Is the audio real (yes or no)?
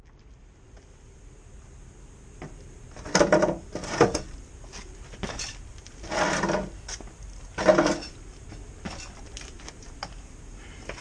yes